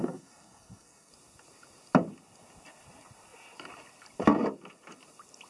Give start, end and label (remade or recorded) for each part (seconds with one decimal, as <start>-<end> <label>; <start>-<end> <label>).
0.0-1.1 remade; 1.1-5.5 recorded